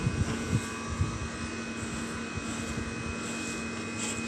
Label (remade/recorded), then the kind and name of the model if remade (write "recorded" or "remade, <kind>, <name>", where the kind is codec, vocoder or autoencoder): recorded